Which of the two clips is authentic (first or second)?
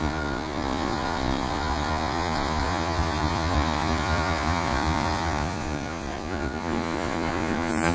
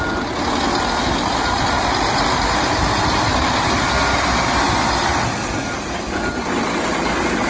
second